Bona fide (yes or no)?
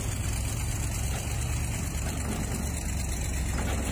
yes